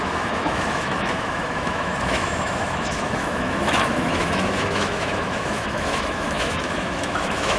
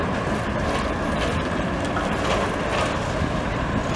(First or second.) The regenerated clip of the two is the first